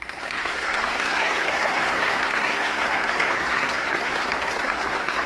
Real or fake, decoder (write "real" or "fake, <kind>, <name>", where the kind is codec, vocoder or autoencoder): fake, codec, SNAC